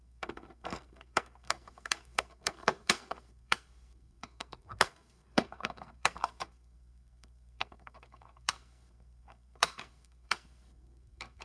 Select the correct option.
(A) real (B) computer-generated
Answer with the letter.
B